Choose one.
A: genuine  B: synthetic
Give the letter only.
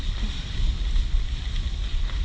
A